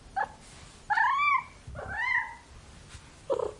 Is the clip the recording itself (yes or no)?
yes